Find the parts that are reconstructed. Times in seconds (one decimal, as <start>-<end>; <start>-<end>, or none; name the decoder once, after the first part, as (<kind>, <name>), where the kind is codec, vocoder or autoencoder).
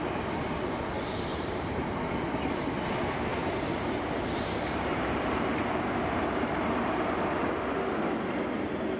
1.3-2.0 (vocoder, BigVGAN v2); 3.3-7.5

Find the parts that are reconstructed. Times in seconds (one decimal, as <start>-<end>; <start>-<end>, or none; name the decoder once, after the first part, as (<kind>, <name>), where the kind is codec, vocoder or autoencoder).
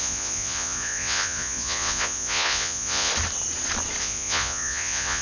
0.0-3.1 (vocoder, Vocos); 4.0-5.2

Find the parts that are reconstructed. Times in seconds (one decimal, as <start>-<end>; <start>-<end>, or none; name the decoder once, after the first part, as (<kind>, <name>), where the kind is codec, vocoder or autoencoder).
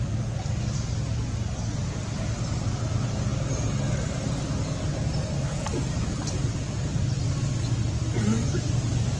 none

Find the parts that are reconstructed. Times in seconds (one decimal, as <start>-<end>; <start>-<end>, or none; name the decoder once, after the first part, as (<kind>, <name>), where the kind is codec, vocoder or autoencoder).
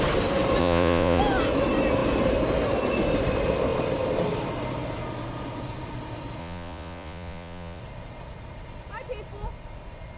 0.6-1.2 (vocoder, Vocos); 6.4-7.8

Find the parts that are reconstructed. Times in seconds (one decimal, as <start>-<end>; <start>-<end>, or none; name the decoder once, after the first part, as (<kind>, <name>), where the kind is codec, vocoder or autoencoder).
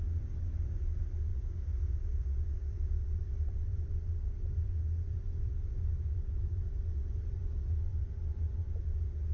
1.3-3.2 (vocoder, BigVGAN v2); 6.5-7.4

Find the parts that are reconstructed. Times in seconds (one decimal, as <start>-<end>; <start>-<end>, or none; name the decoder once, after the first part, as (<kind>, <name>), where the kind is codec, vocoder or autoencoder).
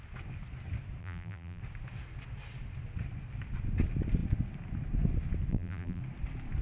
1.0-1.6 (vocoder, BigVGAN v2); 5.5-6.0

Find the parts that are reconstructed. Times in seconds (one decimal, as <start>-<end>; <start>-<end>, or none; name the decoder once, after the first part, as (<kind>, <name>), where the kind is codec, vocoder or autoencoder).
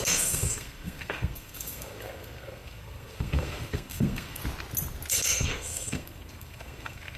0.0-4.4 (codec, SNAC); 5.1-7.2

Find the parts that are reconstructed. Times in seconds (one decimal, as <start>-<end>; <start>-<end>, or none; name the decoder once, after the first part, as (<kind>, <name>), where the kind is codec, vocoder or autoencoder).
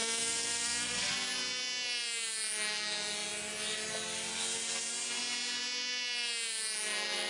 0.0-1.1 (codec, SNAC)